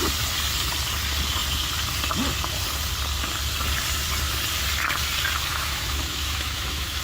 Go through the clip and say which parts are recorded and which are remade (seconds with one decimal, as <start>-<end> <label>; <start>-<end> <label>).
0.0-5.5 recorded; 5.5-7.0 remade